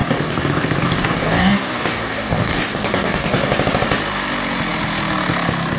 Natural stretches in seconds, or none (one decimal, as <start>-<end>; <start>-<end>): 3.5-5.8